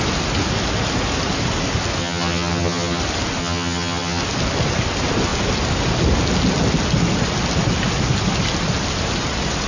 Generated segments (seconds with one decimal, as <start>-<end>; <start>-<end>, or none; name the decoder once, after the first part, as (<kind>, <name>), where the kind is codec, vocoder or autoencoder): 2.0-3.0 (vocoder, HiFi-GAN); 3.4-4.2